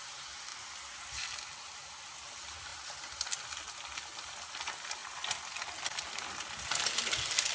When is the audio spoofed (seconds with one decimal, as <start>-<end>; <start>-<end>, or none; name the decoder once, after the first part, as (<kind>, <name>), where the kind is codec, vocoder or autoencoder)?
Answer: none

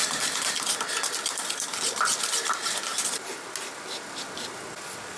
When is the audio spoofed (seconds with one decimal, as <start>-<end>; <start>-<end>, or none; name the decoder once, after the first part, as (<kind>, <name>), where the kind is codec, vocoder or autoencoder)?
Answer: none

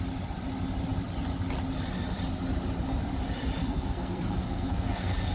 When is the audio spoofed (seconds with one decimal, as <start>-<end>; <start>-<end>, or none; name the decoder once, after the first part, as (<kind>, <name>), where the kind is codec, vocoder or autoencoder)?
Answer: 3.6-5.3 (codec, SNAC)

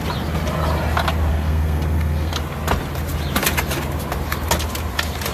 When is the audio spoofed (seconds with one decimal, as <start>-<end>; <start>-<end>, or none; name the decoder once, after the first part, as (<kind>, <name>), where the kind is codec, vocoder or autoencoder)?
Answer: 1.3-2.3 (codec, SNAC)

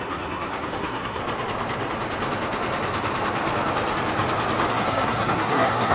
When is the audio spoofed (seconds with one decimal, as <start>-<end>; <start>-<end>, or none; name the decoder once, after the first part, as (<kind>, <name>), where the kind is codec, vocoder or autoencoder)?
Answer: 0.0-1.2 (codec, SNAC); 4.7-5.9

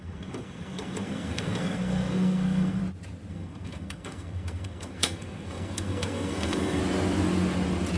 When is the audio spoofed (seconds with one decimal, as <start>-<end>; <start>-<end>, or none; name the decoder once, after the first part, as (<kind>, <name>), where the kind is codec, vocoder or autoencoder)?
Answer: 0.0-2.8 (codec, SNAC); 3.3-6.8

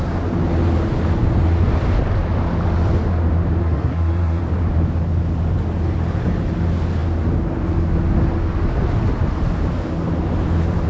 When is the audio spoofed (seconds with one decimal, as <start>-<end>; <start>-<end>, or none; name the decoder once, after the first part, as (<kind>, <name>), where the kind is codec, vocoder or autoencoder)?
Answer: 3.6-4.4 (codec, SNAC)

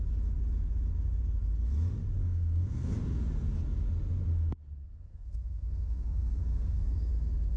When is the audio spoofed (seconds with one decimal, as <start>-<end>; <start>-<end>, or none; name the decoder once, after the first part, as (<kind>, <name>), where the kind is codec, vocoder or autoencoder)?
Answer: 2.2-2.9 (codec, SNAC); 5.1-7.1